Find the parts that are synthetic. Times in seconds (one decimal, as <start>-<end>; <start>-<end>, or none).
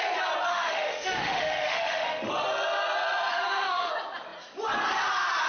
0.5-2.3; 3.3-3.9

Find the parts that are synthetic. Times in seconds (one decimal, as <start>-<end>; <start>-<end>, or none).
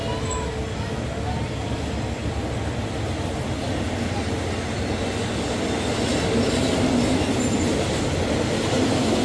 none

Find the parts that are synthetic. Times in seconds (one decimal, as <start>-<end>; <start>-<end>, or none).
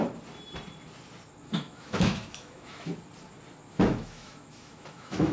1.5-2.9; 3.7-5.3